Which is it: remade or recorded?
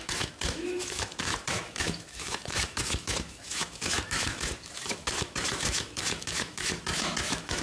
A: remade